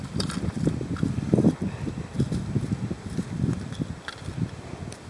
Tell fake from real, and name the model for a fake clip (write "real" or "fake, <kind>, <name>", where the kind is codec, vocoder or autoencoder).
real